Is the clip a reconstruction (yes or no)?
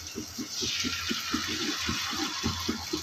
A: no